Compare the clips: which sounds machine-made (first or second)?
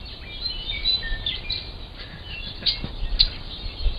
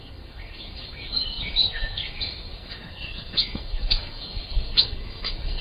second